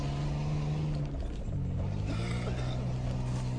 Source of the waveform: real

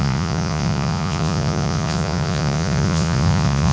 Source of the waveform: fake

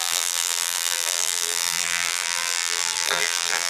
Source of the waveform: fake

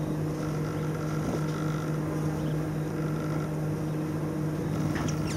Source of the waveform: real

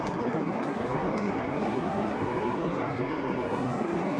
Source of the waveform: fake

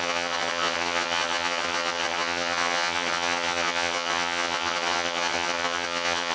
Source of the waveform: fake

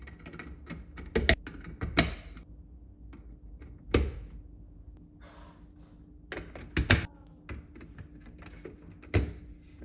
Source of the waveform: real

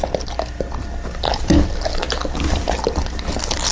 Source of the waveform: real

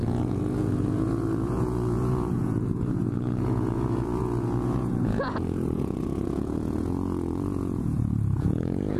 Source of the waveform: fake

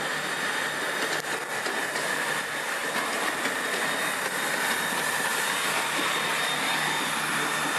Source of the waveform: real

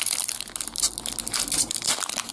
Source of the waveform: real